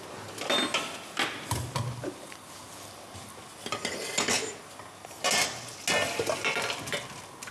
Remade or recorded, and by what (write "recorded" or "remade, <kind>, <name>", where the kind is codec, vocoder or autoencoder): recorded